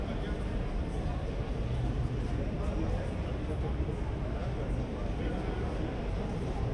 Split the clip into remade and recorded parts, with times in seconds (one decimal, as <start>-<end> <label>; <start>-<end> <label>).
0.0-6.7 recorded